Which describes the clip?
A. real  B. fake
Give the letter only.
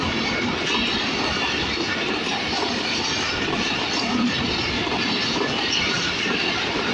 A